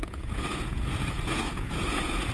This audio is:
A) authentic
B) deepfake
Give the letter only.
B